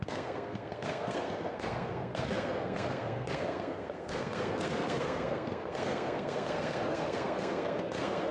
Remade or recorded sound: remade